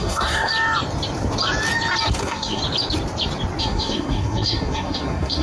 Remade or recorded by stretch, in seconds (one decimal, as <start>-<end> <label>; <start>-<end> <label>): 0.0-0.5 remade; 0.5-2.2 recorded; 2.2-2.6 remade; 2.6-3.6 recorded; 3.6-5.4 remade